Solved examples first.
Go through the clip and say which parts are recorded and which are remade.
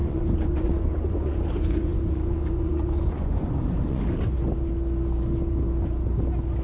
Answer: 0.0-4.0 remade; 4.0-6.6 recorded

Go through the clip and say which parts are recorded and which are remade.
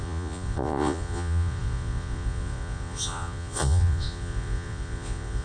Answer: 0.0-5.4 remade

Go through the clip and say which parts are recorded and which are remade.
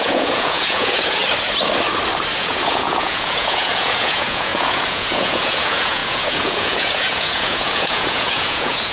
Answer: 0.0-1.2 remade; 1.2-2.4 recorded; 2.4-8.9 remade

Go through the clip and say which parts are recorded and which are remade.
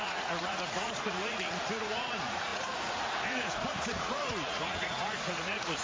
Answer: 0.0-5.8 remade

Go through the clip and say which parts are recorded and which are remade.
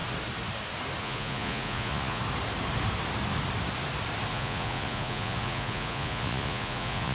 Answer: 0.0-1.0 recorded; 1.0-2.2 remade; 2.2-4.3 recorded; 4.3-7.1 remade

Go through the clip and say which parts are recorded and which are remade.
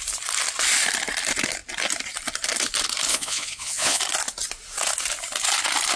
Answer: 0.0-3.1 recorded; 3.1-4.0 remade; 4.0-6.0 recorded